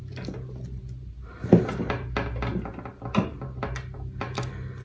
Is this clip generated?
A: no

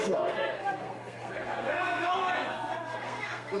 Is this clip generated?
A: yes